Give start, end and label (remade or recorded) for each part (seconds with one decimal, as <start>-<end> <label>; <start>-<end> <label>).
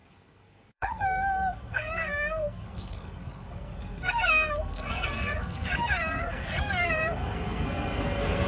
0.0-8.5 remade